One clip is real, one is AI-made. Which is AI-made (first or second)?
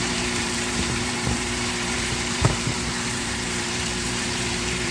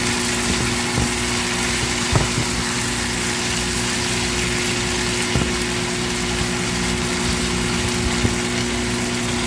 first